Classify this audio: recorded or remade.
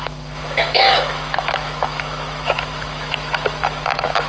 remade